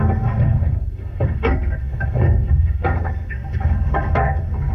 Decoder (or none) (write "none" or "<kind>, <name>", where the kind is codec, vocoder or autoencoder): codec, SNAC